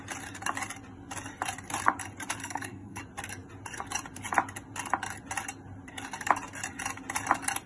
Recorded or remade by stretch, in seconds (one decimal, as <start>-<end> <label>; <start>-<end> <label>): 0.0-2.4 recorded; 2.4-3.0 remade; 3.0-7.7 recorded